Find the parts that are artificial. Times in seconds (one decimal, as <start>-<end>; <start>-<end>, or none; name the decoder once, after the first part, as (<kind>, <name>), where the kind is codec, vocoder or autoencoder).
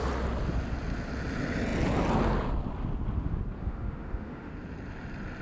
3.6-4.5 (autoencoder, DAC-VAE)